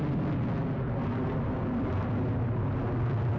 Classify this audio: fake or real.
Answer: real